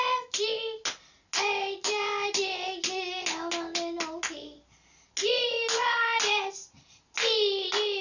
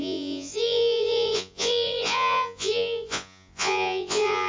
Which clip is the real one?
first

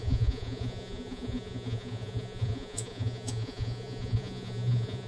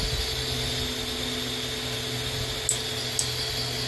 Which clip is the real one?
second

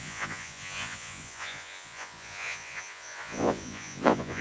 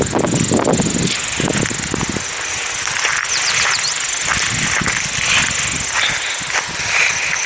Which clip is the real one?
second